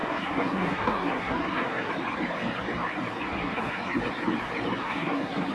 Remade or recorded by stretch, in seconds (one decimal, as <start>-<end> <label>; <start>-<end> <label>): 0.0-1.9 remade; 1.9-3.4 recorded; 3.4-4.0 remade; 4.0-4.8 recorded; 4.8-5.5 remade